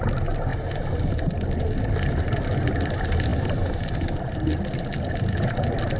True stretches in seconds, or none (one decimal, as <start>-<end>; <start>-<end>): 0.0-6.0